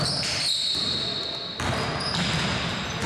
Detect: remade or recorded recorded